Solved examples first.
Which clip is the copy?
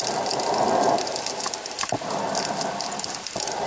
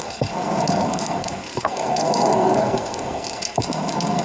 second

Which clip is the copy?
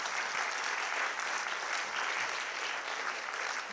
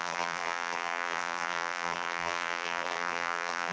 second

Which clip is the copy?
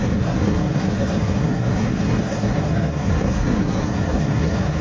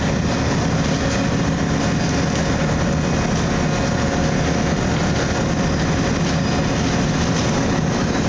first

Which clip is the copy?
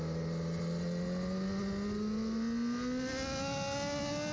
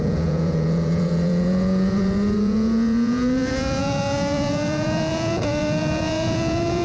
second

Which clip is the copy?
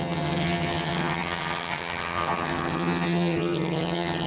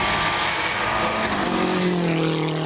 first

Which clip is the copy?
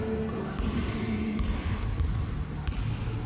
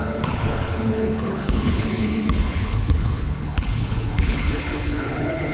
second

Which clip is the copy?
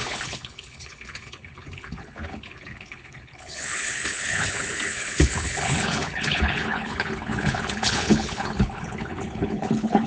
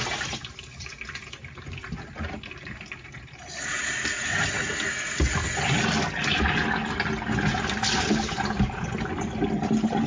first